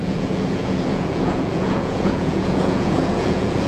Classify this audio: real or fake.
fake